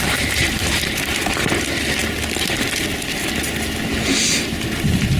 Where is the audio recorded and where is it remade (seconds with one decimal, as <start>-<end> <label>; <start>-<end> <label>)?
0.0-1.5 remade; 1.5-5.2 recorded